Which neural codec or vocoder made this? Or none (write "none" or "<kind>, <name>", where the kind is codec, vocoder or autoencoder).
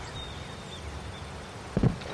none